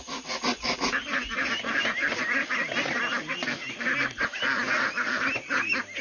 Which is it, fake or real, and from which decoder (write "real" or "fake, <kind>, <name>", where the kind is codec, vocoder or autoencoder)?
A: real